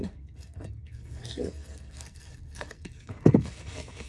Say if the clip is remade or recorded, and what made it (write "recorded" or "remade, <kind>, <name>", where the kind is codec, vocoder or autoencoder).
remade, codec, SNAC